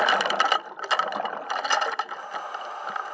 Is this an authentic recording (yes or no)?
yes